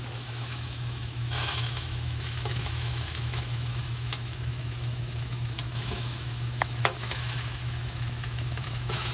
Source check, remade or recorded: remade